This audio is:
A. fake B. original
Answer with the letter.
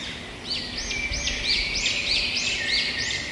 B